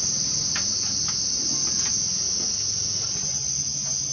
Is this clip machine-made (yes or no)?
no